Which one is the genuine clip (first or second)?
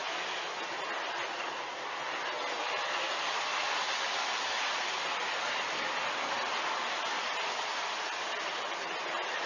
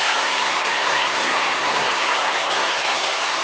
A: first